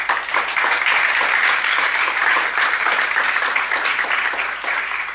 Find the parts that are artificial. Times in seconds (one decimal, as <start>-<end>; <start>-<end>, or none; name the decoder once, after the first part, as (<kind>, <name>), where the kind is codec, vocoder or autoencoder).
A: 2.2-3.4 (vocoder, BigVGAN v2)